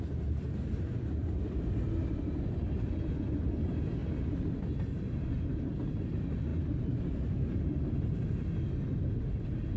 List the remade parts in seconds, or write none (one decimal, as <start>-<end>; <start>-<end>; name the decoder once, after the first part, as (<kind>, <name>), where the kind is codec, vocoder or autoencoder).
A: none